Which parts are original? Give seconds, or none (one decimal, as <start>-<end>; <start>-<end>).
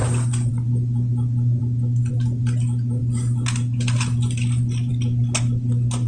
0.0-6.1